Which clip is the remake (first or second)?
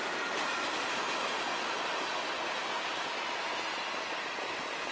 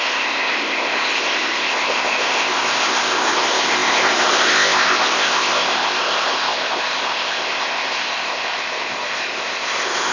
second